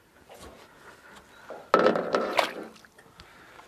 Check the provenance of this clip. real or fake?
real